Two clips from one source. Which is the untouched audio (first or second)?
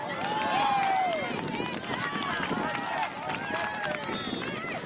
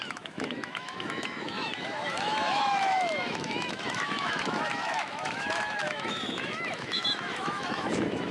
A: first